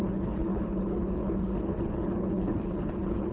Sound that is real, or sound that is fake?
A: fake